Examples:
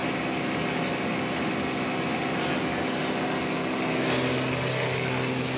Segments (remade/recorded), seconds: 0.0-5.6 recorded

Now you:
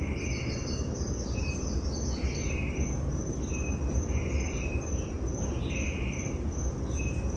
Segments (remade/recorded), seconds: 0.0-4.2 recorded; 4.2-5.3 remade; 5.3-6.1 recorded; 6.1-7.4 remade

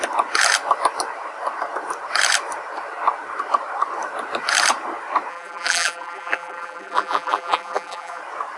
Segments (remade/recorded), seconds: 0.0-5.3 recorded; 5.3-8.2 remade; 8.2-8.6 recorded

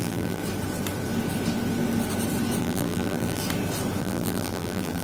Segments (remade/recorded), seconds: 0.0-0.4 remade; 0.4-2.6 recorded; 2.6-3.4 remade; 3.4-4.0 recorded; 4.0-5.0 remade

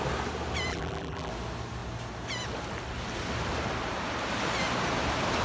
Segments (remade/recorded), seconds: 0.0-0.7 recorded; 0.7-1.3 remade; 1.3-5.4 recorded